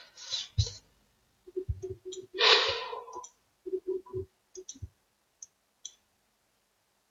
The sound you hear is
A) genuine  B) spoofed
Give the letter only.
A